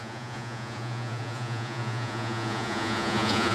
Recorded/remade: remade